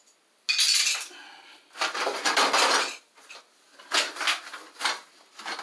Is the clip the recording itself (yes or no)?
yes